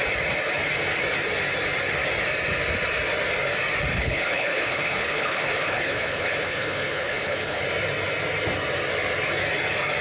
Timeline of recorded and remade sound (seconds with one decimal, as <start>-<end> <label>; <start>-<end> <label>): 0.0-3.9 recorded; 3.9-7.6 remade; 7.6-10.0 recorded